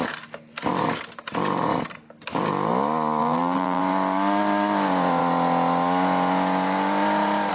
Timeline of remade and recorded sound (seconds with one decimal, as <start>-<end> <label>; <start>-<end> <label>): 0.0-3.2 recorded; 3.2-3.8 remade; 3.8-7.5 recorded